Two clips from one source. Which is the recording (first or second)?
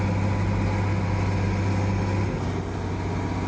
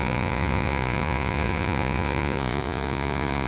first